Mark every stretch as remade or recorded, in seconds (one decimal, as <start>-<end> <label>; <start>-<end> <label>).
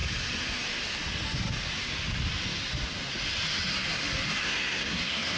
0.0-4.4 recorded; 4.4-5.4 remade